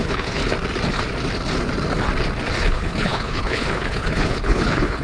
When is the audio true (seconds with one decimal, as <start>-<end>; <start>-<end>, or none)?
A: 0.4-2.5